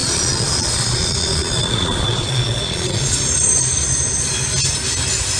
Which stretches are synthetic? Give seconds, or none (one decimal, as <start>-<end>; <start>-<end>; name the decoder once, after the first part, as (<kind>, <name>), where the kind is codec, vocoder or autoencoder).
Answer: 0.0-3.2 (vocoder, Vocos)